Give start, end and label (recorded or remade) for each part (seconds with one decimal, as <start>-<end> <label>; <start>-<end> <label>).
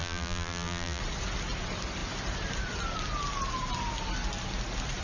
0.0-1.0 remade; 1.0-5.0 recorded